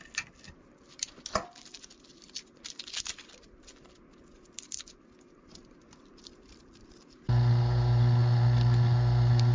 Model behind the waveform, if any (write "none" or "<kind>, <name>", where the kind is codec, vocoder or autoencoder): none